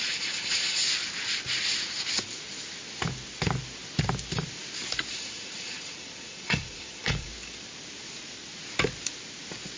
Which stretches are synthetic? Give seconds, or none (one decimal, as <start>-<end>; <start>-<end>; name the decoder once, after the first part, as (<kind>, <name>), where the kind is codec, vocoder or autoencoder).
0.0-0.8 (vocoder, Vocos); 5.1-7.3

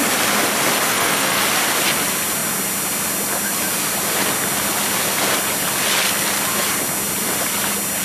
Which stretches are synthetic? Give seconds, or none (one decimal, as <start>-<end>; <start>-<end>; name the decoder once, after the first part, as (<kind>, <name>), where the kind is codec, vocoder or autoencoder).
0.9-1.4 (codec, SNAC)

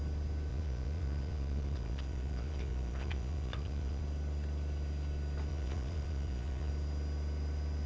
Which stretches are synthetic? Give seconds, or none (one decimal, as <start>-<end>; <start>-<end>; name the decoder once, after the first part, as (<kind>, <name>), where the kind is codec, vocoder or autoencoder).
0.5-4.0 (vocoder, Vocos); 5.5-6.7

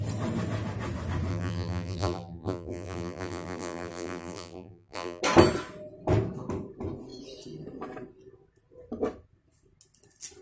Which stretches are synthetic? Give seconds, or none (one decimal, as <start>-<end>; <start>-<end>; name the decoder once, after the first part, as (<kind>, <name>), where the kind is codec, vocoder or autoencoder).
1.3-5.2 (vocoder, BigVGAN v2)

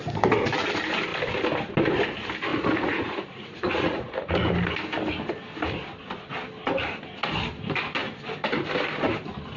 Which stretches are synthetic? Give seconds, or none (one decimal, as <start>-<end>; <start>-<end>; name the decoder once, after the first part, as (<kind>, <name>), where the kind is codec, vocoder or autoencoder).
2.5-4.3 (vocoder, Vocos)